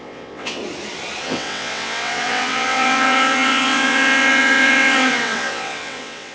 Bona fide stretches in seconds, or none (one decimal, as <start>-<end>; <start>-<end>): 0.6-1.2